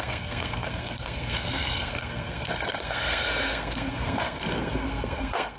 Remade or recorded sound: remade